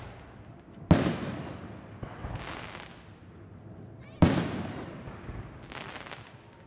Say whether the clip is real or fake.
real